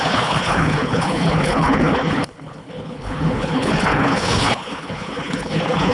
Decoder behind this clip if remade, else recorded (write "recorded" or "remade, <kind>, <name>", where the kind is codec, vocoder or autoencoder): remade, codec, HILCodec